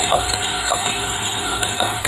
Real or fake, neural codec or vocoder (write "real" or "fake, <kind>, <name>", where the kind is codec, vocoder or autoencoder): fake, codec, SNAC